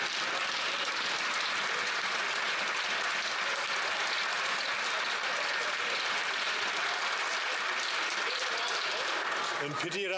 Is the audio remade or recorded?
recorded